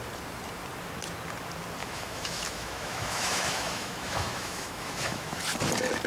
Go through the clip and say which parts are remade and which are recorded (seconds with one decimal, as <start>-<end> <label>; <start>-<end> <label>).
0.0-1.8 recorded; 1.8-5.4 remade; 5.4-6.1 recorded